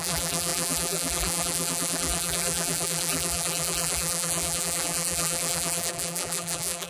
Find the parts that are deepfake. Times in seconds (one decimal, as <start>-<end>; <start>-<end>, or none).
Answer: 0.0-6.9